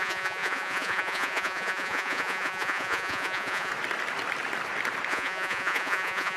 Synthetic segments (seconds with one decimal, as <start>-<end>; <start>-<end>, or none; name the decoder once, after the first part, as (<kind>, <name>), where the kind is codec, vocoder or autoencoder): 0.0-3.7 (vocoder, Vocos); 5.1-6.4